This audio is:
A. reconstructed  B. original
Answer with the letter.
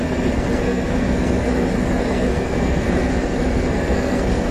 A